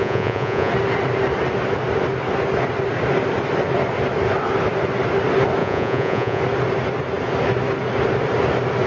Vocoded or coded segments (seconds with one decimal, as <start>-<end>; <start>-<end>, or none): 0.0-0.7; 5.6-6.4